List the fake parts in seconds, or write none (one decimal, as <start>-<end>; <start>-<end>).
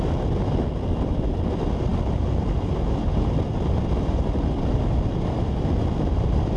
none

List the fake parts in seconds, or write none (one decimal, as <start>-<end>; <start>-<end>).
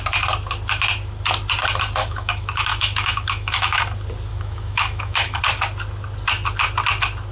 2.0-3.8; 4.3-5.4